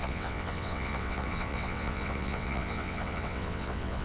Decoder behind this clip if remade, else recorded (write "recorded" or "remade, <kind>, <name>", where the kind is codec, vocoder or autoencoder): remade, vocoder, WaveNeXt